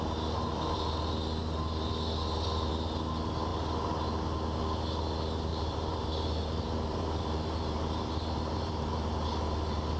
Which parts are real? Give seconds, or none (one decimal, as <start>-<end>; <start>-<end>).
0.0-5.5; 8.9-10.0